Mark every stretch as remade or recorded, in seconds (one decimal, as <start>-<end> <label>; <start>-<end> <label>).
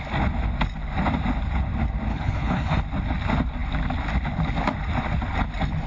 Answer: 0.0-2.1 recorded; 2.1-2.8 remade; 2.8-5.9 recorded